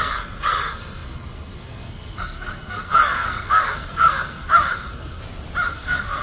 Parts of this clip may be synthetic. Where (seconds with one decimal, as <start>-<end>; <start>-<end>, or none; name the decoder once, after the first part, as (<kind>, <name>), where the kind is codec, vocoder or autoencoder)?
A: 0.0-5.2 (codec, SNAC); 5.7-6.2